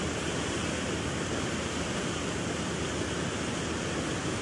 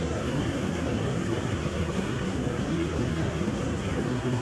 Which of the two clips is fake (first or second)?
second